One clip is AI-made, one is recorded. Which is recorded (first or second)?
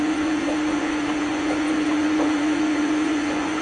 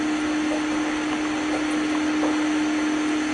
second